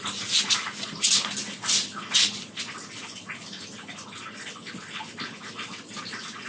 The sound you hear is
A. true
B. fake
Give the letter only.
A